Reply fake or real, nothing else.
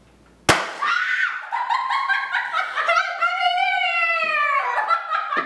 real